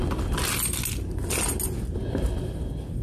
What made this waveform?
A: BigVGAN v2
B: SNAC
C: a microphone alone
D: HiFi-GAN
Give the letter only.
C